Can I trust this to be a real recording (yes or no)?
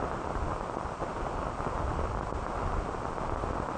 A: yes